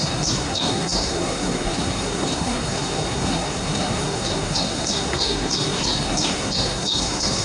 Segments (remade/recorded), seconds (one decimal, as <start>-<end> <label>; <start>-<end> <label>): 0.0-7.4 remade